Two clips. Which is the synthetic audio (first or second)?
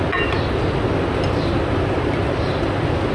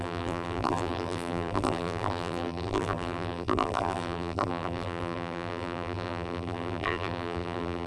second